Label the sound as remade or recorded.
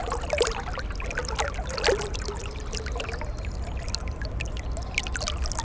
recorded